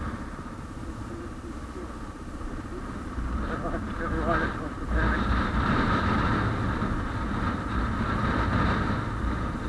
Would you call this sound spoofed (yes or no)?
no